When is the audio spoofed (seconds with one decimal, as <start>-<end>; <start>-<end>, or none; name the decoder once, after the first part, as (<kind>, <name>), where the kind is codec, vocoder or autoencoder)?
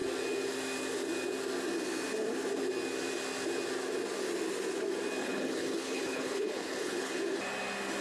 5.2-7.1 (codec, HILCodec)